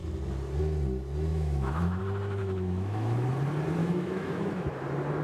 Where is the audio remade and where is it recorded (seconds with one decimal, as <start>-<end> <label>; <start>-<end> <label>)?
0.0-1.3 recorded; 1.3-2.0 remade; 2.0-2.4 recorded; 2.4-3.3 remade; 3.3-3.8 recorded; 3.8-4.7 remade; 4.7-5.2 recorded